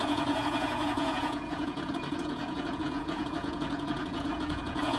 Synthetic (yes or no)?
yes